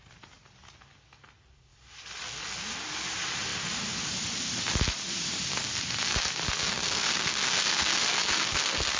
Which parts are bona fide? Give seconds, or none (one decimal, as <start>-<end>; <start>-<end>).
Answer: 0.0-6.8